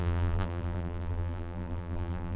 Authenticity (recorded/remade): remade